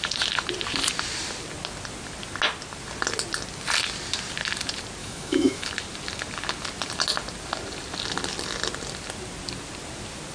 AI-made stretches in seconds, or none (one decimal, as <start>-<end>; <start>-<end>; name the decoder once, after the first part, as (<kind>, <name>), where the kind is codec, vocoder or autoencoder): 5.0-5.7 (autoencoder, DAC-VAE)